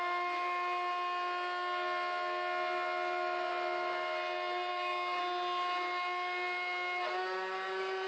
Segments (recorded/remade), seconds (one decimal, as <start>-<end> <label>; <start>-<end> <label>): 0.0-4.7 recorded; 4.7-5.2 remade; 5.2-8.1 recorded